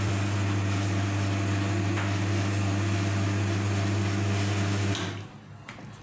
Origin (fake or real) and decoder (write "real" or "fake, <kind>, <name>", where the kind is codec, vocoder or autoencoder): real